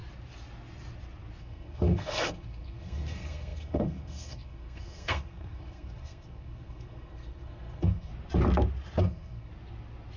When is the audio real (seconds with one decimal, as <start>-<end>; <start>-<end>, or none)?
0.0-1.4; 8.1-9.0; 9.5-10.2